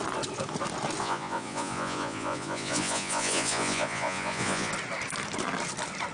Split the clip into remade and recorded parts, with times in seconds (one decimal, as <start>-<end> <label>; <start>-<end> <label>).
0.0-1.0 recorded; 1.0-4.7 remade; 4.7-6.1 recorded

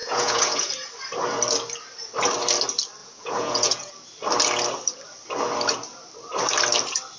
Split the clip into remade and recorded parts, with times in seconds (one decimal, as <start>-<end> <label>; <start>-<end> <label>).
0.0-0.7 remade; 0.7-3.0 recorded; 3.0-3.9 remade; 3.9-7.2 recorded

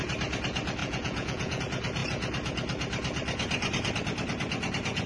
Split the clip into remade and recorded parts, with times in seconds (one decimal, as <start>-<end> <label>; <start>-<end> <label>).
0.0-0.8 recorded; 0.8-1.6 remade; 1.6-5.1 recorded

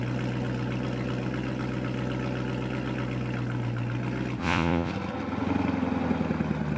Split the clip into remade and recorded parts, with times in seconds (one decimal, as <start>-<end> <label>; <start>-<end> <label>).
0.0-4.4 recorded; 4.4-4.9 remade; 4.9-6.8 recorded

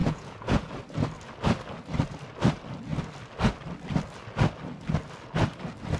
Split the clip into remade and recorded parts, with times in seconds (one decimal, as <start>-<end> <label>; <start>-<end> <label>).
0.0-0.7 remade; 0.7-6.0 recorded

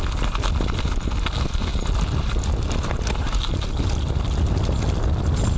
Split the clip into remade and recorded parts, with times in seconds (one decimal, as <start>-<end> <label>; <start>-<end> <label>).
0.0-5.6 recorded